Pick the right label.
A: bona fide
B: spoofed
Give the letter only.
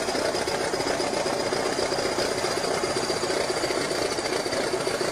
A